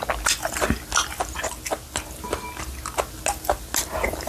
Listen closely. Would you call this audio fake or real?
real